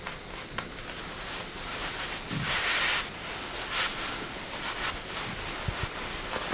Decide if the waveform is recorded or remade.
recorded